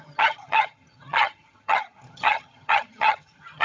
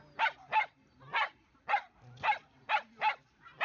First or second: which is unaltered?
second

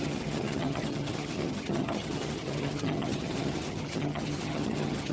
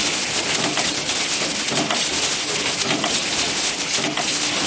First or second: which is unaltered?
second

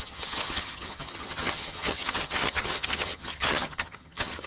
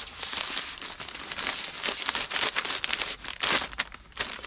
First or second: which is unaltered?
second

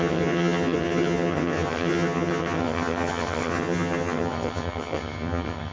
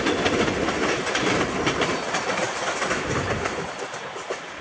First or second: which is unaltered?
second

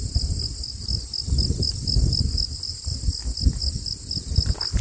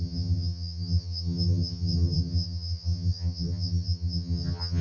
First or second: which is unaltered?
first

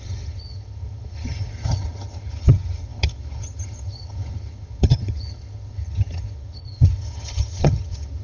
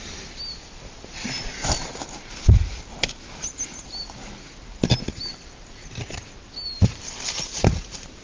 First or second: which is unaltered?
second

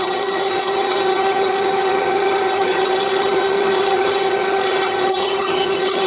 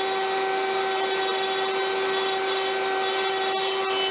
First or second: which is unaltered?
second